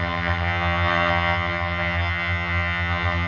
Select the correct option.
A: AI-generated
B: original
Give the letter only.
A